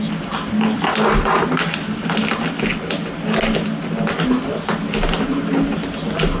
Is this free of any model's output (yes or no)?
yes